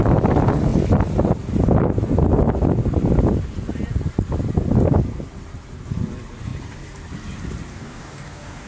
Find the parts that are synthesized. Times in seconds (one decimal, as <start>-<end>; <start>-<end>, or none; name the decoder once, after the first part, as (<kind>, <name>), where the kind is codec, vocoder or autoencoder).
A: 7.7-8.7 (codec, DAC)